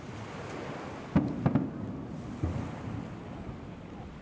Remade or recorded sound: recorded